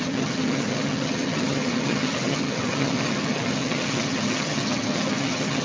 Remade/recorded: remade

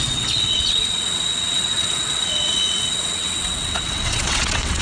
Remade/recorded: remade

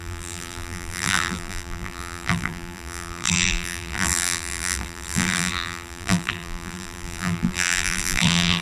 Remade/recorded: remade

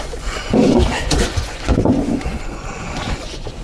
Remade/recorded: remade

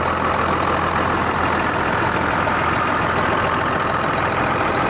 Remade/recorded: recorded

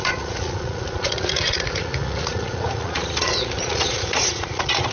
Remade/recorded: remade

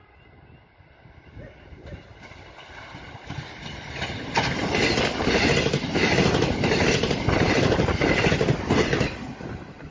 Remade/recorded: recorded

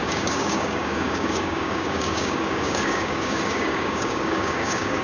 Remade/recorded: remade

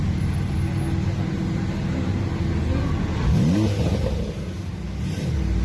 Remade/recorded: recorded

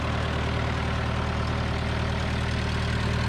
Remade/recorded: recorded